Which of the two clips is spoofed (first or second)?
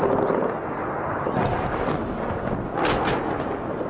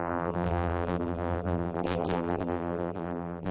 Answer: second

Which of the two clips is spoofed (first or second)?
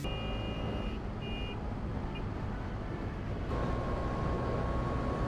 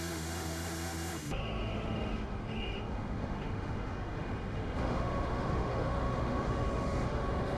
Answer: second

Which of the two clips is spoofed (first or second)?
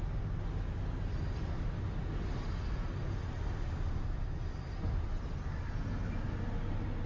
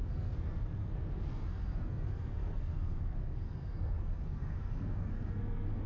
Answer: second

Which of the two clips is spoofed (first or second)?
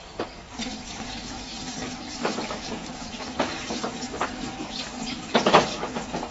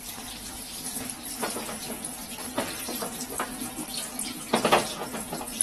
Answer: first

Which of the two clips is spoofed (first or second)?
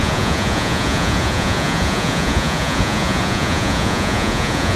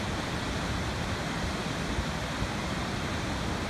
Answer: first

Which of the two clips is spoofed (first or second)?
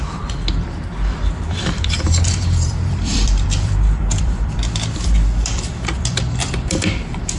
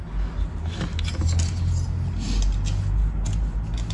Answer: first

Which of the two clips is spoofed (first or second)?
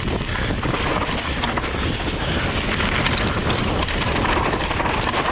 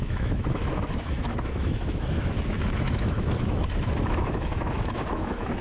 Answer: second